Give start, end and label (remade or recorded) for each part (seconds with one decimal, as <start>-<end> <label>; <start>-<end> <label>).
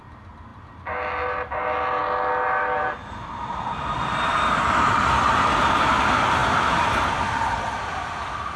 0.0-8.6 recorded